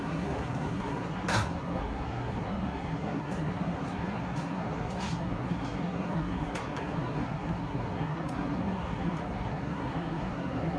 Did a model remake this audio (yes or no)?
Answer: yes